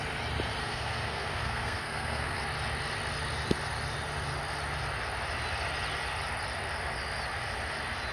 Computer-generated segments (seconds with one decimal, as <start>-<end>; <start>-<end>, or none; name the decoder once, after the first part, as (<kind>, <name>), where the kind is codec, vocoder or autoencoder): 0.6-2.4 (codec, SNAC)